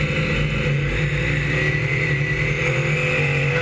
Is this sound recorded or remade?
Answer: recorded